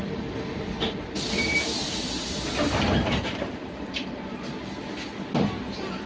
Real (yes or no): yes